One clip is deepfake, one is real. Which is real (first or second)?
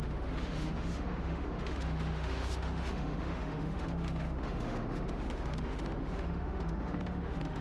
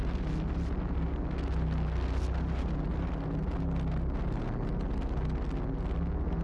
second